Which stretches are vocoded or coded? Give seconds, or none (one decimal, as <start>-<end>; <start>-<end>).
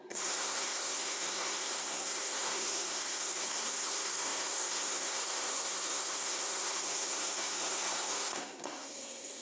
0.0-9.4